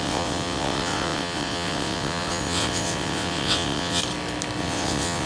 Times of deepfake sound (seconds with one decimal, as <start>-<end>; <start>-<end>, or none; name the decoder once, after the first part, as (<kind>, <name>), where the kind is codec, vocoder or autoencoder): 0.0-4.0 (vocoder, WaveNeXt); 4.6-5.2

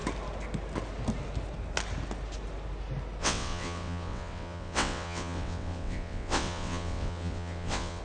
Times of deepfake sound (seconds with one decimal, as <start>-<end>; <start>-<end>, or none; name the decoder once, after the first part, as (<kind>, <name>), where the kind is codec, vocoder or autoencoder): 3.2-8.0 (vocoder, WaveNeXt)